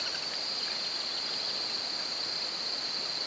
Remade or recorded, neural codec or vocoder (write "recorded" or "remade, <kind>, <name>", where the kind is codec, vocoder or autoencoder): recorded